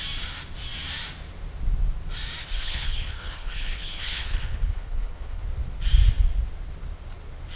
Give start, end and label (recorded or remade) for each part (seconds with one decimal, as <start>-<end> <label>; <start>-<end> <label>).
0.0-2.4 recorded; 2.4-5.4 remade; 5.4-7.6 recorded